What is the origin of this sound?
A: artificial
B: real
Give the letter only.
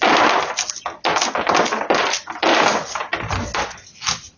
B